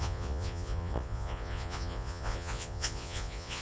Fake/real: fake